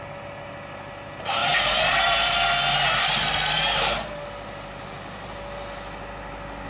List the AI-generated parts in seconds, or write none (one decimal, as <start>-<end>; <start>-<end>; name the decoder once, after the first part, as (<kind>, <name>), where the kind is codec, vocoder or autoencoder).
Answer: 1.4-2.3 (vocoder, BigVGAN v2)